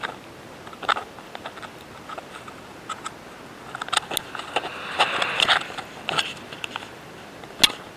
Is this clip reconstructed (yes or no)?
no